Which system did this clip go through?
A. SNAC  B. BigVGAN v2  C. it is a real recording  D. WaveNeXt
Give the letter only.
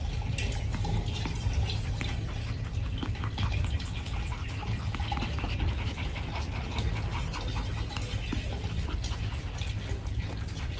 C